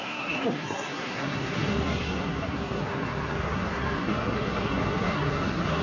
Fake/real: fake